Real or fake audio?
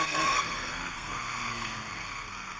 fake